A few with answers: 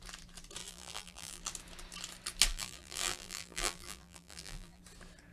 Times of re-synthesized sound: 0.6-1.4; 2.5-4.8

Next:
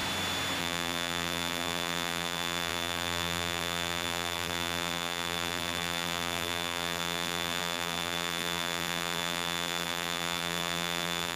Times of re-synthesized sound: 0.6-11.4